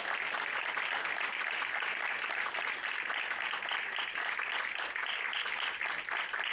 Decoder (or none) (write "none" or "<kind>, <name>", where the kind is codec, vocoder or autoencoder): none